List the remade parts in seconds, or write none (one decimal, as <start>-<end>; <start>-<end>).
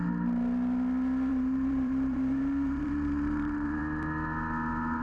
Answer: 1.3-3.8